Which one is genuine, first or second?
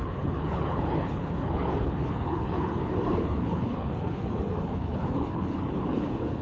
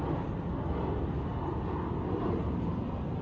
second